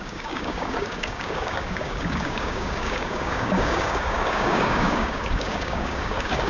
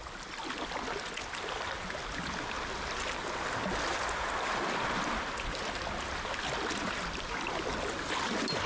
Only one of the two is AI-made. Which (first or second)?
first